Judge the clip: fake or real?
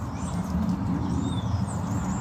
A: real